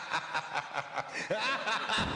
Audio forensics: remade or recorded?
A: recorded